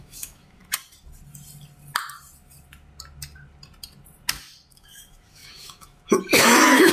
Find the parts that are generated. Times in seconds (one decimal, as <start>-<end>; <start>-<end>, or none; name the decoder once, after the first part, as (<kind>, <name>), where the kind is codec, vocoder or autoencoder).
0.0-0.6 (autoencoder, DAC-VAE); 4.7-6.9